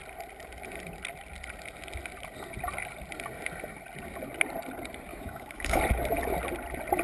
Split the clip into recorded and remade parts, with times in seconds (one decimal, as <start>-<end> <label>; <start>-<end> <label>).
0.0-5.1 recorded; 5.1-5.8 remade; 5.8-7.0 recorded